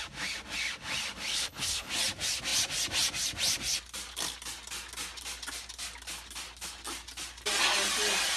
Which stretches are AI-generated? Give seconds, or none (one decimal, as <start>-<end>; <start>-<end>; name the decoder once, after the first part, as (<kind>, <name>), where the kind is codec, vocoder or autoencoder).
1.3-1.9 (codec, HILCodec)